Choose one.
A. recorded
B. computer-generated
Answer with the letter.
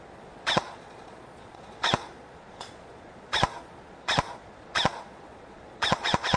B